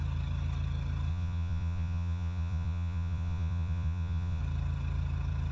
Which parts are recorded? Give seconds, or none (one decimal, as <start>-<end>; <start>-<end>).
0.0-1.1; 4.4-5.5